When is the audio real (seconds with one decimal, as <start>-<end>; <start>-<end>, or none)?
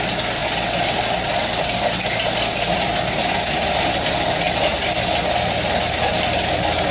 0.0-0.4; 4.5-6.9